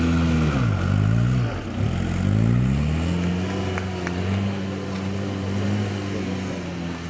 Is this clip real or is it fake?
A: real